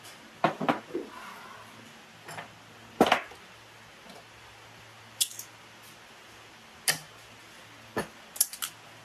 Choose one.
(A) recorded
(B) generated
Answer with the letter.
A